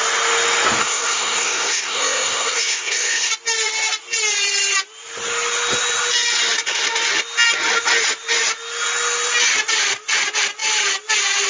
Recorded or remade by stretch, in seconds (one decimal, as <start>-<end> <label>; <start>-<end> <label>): 0.0-0.8 recorded; 0.8-3.3 remade; 3.3-11.5 recorded